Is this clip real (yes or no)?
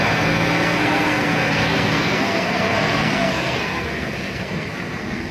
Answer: no